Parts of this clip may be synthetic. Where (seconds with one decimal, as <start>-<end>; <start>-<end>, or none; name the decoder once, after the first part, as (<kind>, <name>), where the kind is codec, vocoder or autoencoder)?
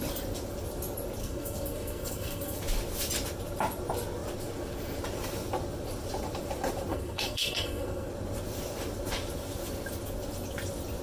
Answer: 1.2-2.6 (codec, SNAC); 6.9-8.1